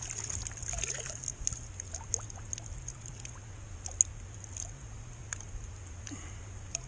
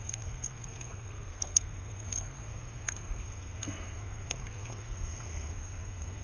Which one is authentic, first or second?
first